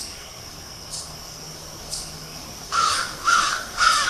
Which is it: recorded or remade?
remade